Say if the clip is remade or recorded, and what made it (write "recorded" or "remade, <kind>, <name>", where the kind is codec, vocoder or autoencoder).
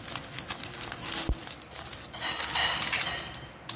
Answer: recorded